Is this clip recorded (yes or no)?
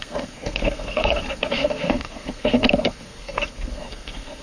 no